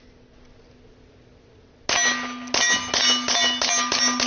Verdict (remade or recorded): recorded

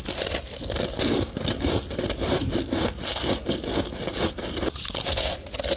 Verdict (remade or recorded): recorded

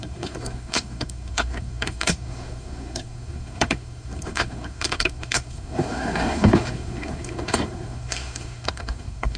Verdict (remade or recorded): remade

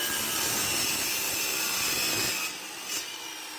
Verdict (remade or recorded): recorded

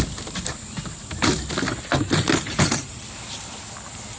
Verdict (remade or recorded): recorded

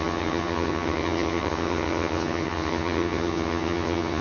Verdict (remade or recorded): remade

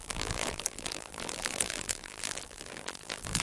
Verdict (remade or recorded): remade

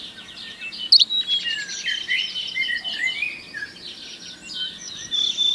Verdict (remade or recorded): recorded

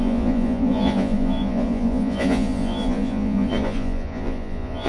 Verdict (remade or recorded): remade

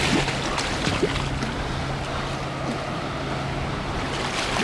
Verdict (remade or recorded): recorded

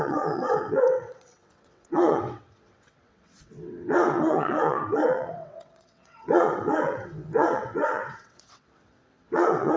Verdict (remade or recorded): remade